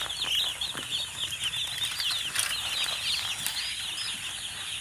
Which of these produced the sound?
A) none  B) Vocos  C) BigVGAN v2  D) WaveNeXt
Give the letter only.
A